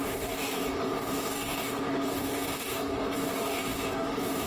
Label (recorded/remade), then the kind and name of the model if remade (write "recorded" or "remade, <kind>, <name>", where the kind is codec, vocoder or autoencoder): remade, codec, DAC